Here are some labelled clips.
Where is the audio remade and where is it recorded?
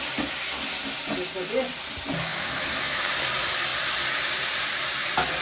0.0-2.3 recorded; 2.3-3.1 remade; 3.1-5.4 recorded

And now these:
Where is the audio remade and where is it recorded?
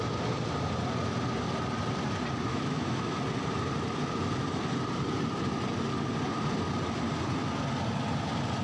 0.0-2.5 recorded; 2.5-3.2 remade; 3.2-8.6 recorded